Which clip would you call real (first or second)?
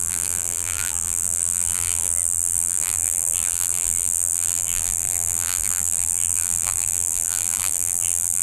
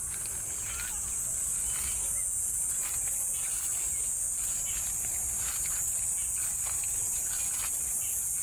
second